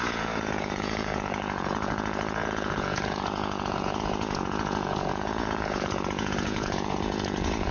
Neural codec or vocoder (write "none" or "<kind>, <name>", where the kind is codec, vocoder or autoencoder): vocoder, Vocos